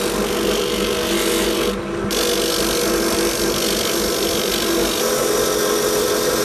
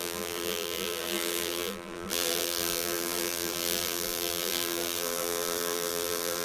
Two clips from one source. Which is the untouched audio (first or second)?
first